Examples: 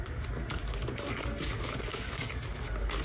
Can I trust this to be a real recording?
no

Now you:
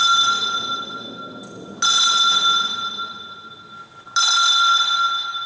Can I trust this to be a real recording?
yes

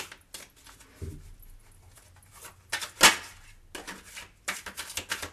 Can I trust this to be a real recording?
yes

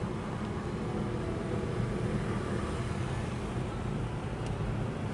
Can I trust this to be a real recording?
yes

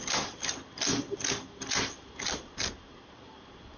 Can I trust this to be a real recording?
yes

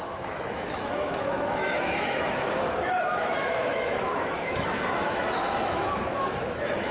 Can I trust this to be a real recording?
no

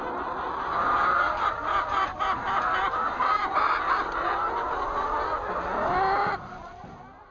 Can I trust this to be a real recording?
yes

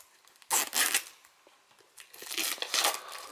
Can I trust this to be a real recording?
yes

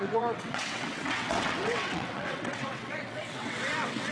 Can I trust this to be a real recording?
no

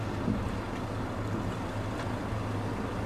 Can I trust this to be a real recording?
yes